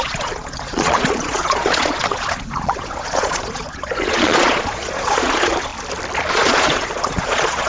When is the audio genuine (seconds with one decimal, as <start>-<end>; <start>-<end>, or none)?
5.7-6.3